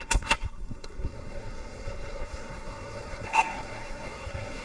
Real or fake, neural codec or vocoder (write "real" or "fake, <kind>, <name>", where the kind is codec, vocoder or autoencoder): fake, codec, SNAC